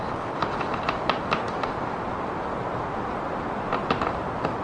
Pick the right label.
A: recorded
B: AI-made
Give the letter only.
A